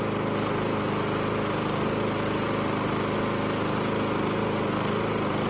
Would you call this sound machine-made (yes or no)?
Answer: no